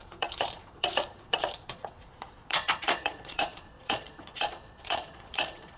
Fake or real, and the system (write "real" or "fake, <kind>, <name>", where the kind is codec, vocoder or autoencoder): fake, vocoder, Vocos